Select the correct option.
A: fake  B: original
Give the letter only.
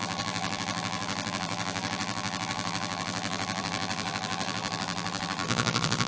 A